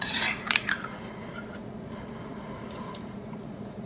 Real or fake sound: fake